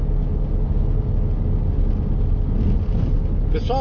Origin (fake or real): real